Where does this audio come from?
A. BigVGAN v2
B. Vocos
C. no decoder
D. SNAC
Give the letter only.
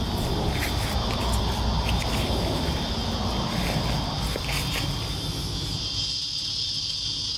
C